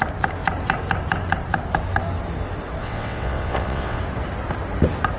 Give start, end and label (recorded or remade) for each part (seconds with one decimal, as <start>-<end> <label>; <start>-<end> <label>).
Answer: 0.0-2.8 recorded; 2.8-4.0 remade; 4.0-5.2 recorded